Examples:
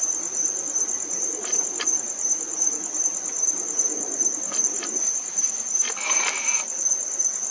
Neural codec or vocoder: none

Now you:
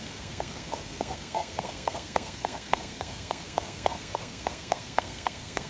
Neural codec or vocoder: codec, SNAC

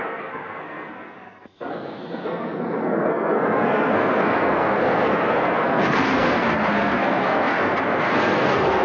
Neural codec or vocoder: codec, SNAC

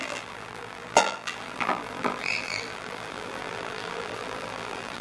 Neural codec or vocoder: vocoder, BigVGAN v2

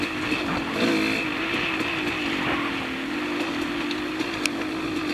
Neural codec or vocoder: none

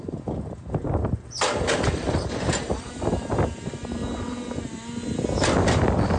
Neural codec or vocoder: none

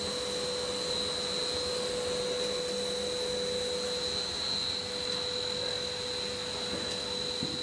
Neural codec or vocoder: none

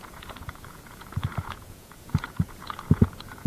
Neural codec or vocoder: vocoder, Vocos